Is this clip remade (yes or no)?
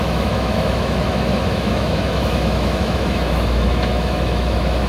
yes